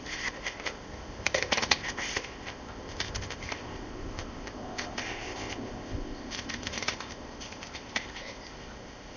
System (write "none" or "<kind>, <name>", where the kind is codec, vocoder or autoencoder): codec, ZipCodec